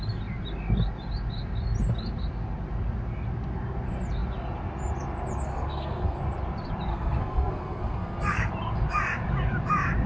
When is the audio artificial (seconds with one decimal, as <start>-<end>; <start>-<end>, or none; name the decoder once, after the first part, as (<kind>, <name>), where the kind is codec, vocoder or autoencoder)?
5.5-6.2 (codec, SNAC); 6.9-8.5